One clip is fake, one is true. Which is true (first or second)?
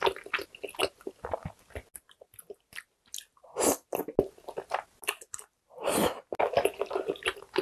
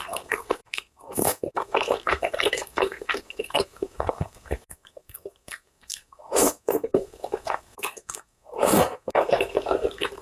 first